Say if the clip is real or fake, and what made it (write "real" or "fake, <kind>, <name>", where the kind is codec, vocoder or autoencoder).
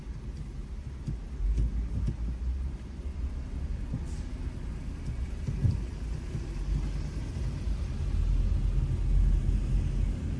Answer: real